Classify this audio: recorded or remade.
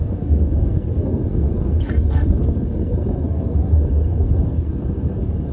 remade